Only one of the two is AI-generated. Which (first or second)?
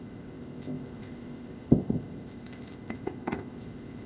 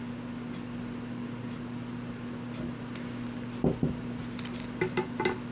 first